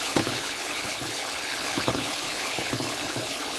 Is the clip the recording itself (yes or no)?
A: no